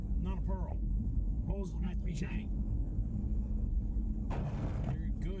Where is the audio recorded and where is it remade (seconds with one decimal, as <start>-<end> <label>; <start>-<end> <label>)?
0.0-0.7 recorded; 0.7-3.9 remade; 3.9-4.4 recorded; 4.4-4.9 remade; 4.9-5.4 recorded